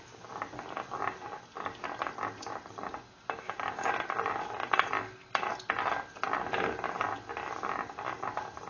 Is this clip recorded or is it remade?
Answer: recorded